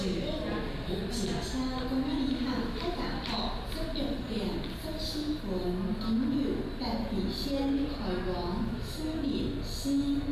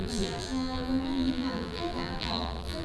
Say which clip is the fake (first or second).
second